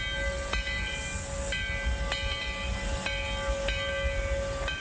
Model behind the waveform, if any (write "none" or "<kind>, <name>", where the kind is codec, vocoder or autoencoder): none